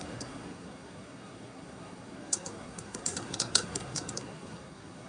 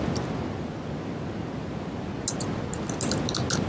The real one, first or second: second